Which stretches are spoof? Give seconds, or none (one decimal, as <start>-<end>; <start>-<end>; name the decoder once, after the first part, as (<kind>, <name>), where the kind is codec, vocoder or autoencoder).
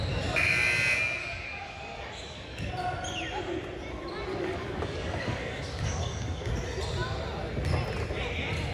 1.2-2.7 (codec, DAC); 4.3-6.5